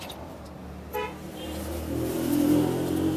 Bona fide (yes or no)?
yes